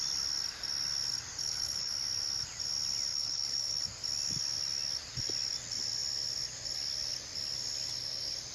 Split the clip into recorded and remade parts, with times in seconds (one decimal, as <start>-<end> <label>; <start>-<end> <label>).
0.0-1.4 recorded; 1.4-1.9 remade; 1.9-3.1 recorded; 3.1-3.8 remade; 3.8-8.5 recorded